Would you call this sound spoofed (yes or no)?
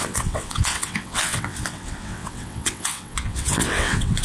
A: yes